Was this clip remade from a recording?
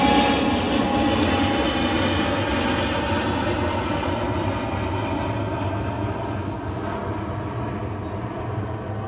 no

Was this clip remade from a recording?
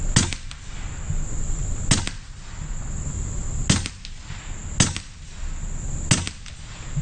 no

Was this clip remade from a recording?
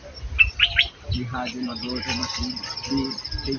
no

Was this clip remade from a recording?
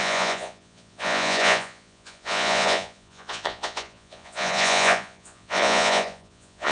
yes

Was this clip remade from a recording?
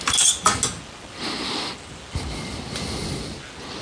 no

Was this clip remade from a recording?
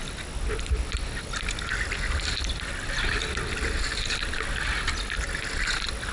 no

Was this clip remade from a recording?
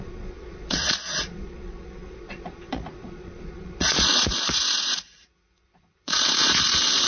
yes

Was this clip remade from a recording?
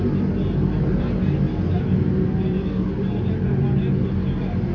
no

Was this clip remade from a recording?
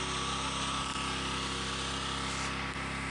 no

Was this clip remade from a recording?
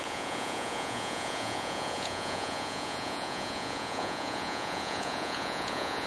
yes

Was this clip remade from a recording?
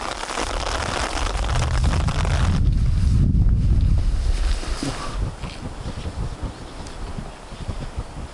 no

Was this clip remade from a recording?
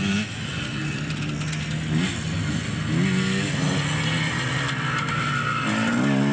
no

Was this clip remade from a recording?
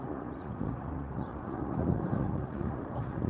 yes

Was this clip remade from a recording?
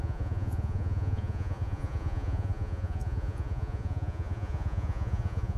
yes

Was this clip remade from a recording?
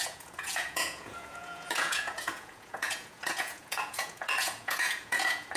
yes